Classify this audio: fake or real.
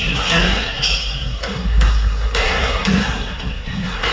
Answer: fake